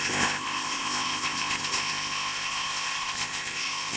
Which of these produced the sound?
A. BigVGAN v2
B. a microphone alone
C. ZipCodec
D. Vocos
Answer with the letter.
C